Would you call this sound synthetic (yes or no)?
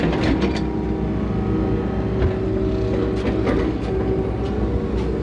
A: no